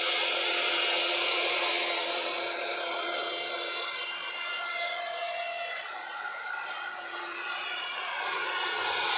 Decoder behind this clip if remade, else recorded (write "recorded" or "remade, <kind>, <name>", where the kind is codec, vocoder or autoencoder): remade, vocoder, Vocos